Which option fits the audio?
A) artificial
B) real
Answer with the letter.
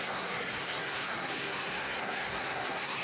A